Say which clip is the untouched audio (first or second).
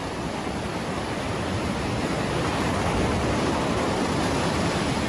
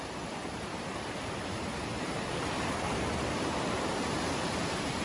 first